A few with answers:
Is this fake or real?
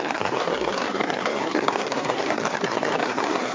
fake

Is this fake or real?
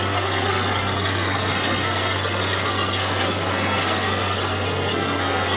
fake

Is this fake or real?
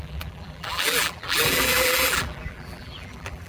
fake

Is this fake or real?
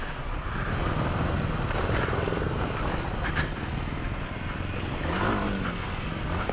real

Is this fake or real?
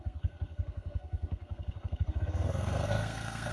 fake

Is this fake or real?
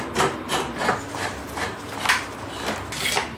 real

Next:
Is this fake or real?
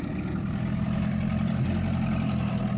real